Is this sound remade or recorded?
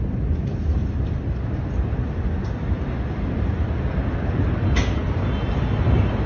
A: recorded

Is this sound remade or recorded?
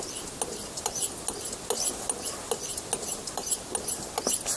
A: recorded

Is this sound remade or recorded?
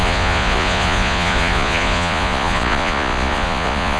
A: remade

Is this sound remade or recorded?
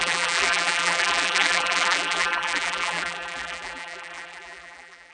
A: remade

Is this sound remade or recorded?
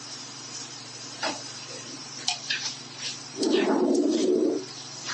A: remade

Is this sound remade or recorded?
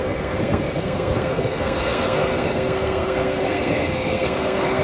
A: remade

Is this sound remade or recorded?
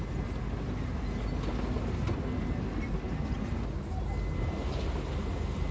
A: recorded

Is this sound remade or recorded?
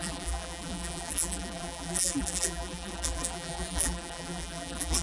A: remade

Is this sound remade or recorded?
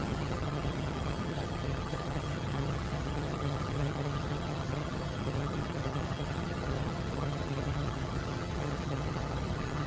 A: remade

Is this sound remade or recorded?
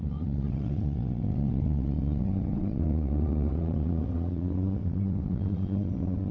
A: remade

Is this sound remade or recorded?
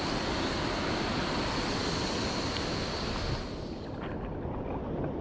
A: recorded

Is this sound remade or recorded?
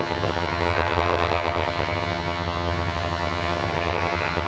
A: remade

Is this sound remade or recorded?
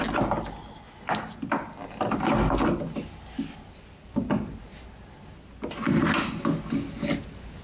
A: recorded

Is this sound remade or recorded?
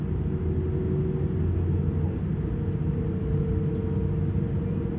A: recorded